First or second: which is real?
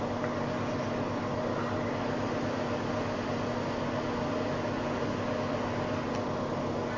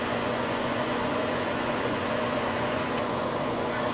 first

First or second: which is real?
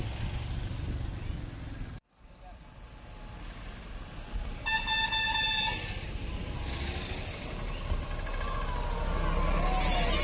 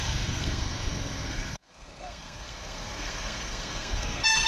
first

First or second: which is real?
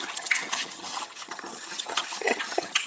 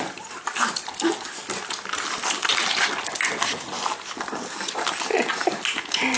second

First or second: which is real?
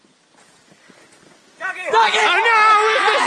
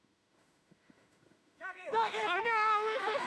first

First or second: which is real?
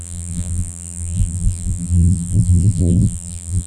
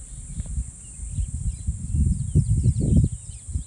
second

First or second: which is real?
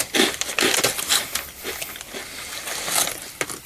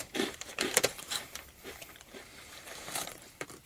first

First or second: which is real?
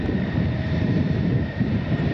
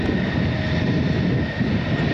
second